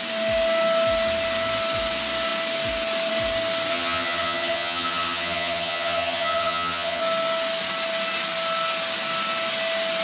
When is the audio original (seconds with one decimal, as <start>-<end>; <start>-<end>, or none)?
0.0-3.7; 7.0-10.0